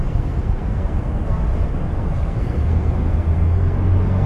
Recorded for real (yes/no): no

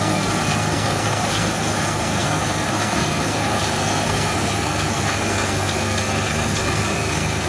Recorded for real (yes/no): no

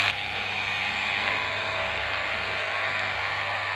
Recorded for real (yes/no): no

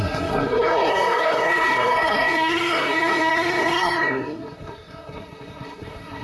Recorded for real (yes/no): no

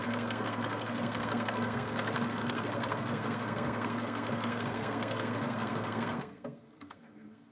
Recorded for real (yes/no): no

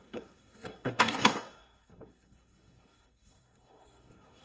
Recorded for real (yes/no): no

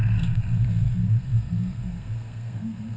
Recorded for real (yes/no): no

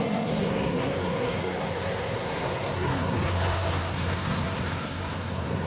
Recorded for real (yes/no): no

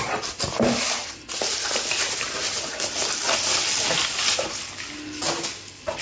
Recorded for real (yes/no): yes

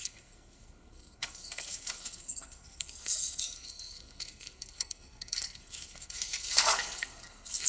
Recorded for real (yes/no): no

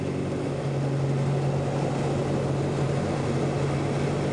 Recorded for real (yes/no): yes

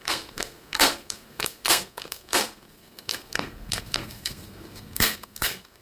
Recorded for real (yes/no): no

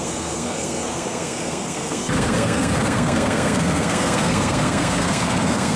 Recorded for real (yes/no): no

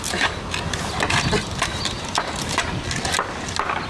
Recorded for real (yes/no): yes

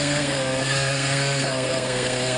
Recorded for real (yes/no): no